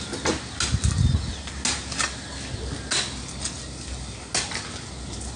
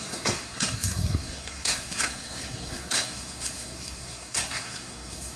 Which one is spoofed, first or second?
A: second